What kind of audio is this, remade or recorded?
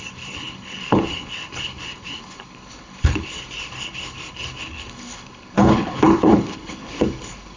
remade